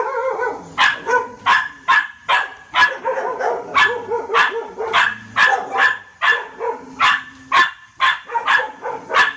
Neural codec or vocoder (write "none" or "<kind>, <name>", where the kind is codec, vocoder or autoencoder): none